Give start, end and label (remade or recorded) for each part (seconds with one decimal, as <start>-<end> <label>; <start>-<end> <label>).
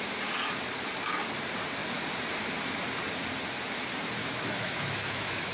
0.0-4.2 recorded; 4.2-5.5 remade